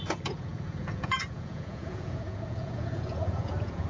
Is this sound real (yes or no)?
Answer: no